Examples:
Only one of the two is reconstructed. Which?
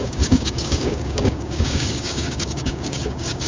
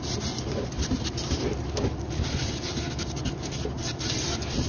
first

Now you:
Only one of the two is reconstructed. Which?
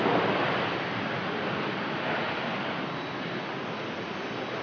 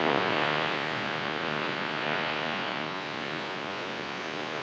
second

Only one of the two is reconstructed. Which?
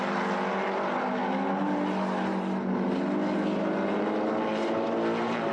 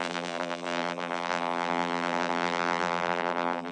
second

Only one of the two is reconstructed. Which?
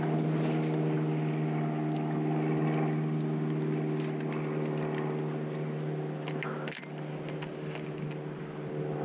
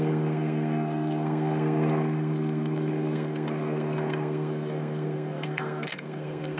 second